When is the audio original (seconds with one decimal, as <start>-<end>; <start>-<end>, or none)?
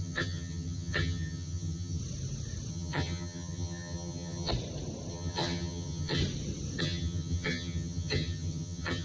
2.0-2.7; 4.5-5.1; 6.2-6.8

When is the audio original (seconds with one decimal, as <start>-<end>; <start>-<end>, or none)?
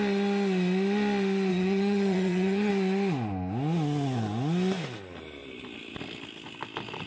0.0-1.5; 2.7-7.1